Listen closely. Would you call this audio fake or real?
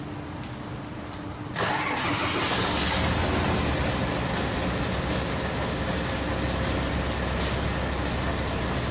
real